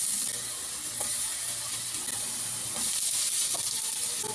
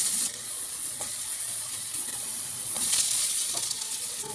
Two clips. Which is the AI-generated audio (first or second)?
second